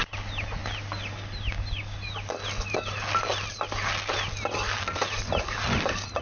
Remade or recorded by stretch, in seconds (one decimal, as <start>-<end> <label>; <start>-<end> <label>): 0.0-6.2 recorded